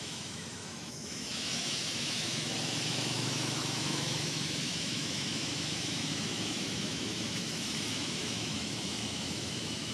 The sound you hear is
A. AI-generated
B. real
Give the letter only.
A